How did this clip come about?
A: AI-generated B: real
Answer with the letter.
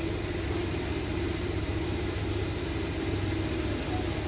B